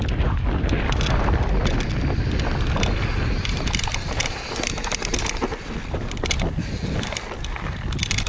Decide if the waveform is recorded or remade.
recorded